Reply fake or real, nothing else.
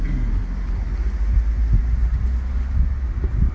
real